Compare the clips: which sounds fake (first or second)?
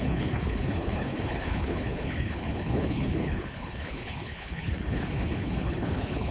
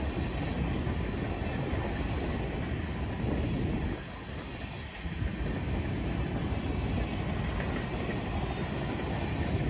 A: first